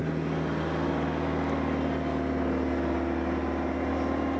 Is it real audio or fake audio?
real